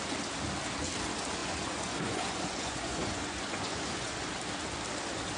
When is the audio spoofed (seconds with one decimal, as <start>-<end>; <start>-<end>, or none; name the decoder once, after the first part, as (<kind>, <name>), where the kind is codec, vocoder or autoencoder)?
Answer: 1.4-4.3 (vocoder, Vocos)